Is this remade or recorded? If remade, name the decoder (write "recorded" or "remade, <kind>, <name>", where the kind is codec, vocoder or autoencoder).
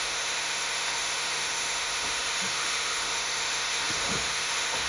remade, autoencoder, DAC-VAE